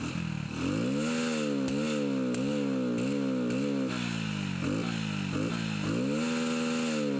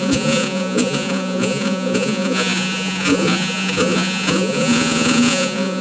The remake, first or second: second